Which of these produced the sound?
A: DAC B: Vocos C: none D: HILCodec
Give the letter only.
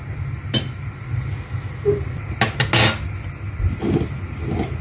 C